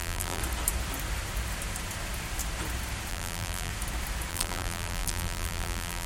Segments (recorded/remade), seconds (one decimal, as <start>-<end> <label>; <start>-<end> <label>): 0.0-0.4 remade; 0.4-3.1 recorded; 3.1-3.7 remade; 3.7-4.3 recorded; 4.3-6.1 remade